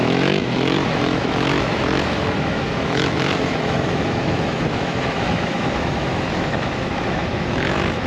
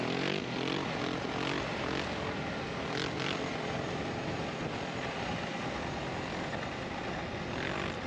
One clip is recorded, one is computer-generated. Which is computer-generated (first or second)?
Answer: first